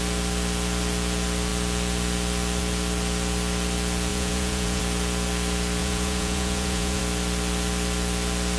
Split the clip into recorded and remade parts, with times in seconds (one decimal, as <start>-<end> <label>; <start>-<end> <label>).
0.0-4.1 recorded; 4.1-4.8 remade; 4.8-5.8 recorded; 5.8-7.0 remade; 7.0-8.6 recorded